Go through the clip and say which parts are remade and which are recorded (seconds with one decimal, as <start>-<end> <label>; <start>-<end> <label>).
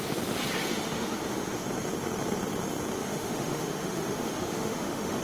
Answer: 0.0-0.6 recorded; 0.6-1.6 remade; 1.6-3.0 recorded; 3.0-5.2 remade